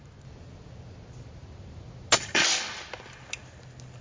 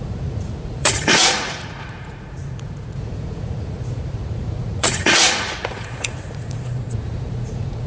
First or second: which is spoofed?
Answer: second